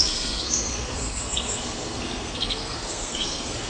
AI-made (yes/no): yes